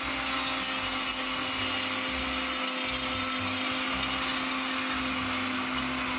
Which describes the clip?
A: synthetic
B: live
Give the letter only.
B